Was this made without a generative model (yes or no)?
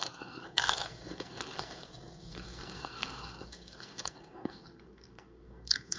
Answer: no